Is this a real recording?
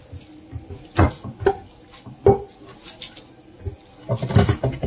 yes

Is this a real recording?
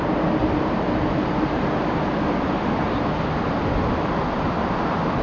yes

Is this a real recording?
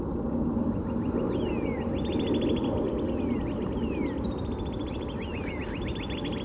yes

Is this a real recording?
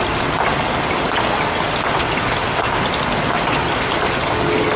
yes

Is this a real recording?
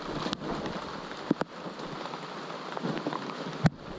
yes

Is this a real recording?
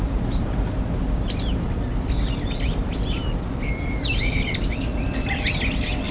yes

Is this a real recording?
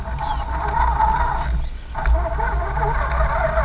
yes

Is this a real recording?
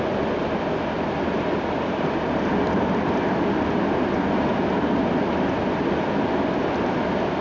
yes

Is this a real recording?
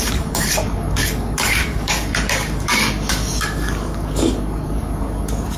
no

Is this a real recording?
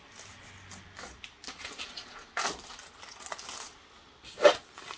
yes